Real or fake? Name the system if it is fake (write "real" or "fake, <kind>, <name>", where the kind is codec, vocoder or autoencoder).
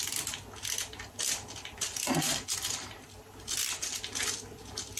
real